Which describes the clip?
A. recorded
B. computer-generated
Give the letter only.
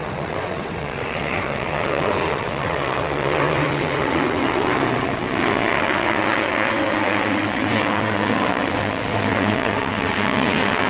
B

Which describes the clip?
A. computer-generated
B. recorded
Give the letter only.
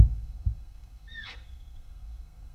A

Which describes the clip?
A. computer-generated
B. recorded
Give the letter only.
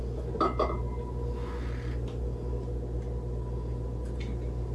B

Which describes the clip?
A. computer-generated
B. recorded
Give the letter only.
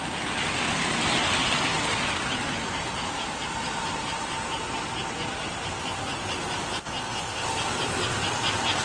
B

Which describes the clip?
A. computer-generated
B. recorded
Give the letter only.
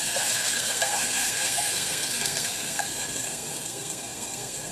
A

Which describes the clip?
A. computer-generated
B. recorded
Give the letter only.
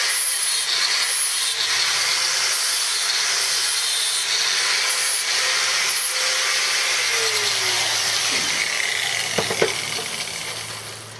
B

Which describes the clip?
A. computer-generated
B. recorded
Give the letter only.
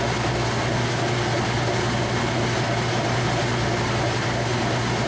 B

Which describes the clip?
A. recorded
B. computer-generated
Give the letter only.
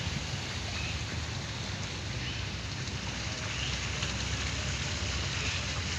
A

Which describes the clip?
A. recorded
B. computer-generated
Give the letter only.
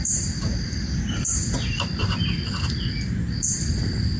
B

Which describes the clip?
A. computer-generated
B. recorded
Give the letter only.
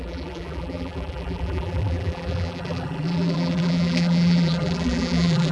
A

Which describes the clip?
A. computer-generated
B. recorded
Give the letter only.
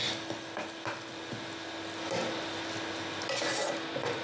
B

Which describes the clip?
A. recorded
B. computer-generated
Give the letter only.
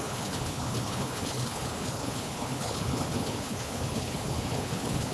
B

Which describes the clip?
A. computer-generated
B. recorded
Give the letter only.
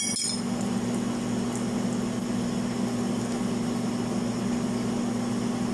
B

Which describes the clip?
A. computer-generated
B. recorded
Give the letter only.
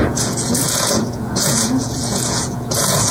A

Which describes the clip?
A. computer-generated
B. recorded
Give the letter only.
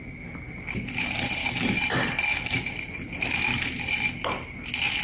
B